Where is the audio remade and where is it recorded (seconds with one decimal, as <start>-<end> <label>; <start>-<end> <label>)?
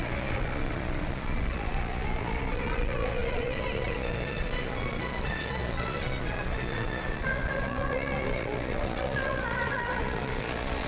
0.0-10.9 remade